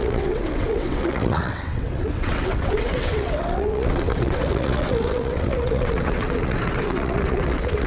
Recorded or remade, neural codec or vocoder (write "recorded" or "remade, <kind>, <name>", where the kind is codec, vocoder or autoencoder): remade, vocoder, WaveNeXt